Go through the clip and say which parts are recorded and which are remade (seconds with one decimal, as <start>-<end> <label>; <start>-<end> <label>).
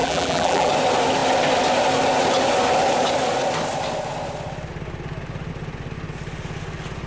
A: 0.0-0.7 remade; 0.7-7.1 recorded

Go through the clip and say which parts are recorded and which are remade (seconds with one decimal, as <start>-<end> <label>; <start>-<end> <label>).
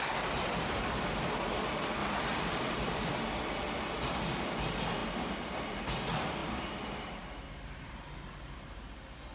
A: 0.0-2.0 recorded; 2.0-3.2 remade; 3.2-6.4 recorded; 6.4-7.9 remade; 7.9-9.3 recorded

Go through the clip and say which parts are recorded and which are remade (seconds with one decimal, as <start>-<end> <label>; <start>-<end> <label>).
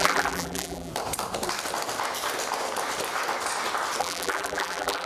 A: 0.0-0.9 remade; 0.9-4.0 recorded; 4.0-5.1 remade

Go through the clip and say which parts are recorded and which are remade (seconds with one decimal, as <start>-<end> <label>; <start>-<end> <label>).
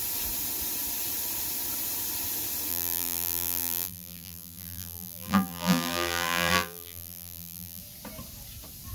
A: 0.0-2.7 recorded; 2.7-7.8 remade; 7.8-8.9 recorded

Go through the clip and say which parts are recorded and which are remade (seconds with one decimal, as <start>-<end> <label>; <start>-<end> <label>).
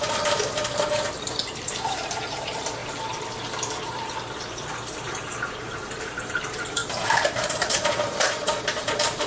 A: 0.0-2.8 remade; 2.8-5.0 recorded; 5.0-9.3 remade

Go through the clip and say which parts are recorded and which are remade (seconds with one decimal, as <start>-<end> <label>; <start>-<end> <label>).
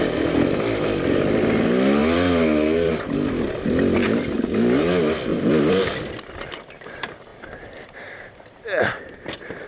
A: 0.0-2.0 recorded; 2.0-2.9 remade; 2.9-5.3 recorded; 5.3-5.8 remade; 5.8-7.3 recorded; 7.3-9.7 remade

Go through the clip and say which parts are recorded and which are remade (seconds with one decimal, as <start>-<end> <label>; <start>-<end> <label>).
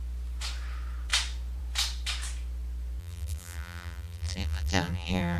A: 0.0-3.0 recorded; 3.0-5.4 remade